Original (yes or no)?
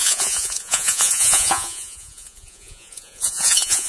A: no